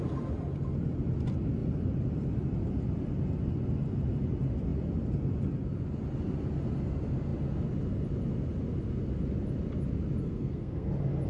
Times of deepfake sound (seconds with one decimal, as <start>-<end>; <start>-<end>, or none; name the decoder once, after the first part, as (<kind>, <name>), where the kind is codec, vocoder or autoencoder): 10.2-10.9 (codec, SNAC)